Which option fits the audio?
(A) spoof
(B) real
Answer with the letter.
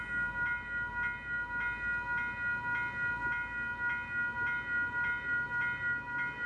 B